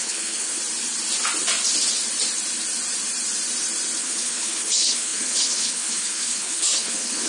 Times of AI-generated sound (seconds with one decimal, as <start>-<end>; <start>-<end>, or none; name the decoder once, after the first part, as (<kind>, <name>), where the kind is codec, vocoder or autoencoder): 0.0-0.6 (codec, HILCodec); 4.0-7.3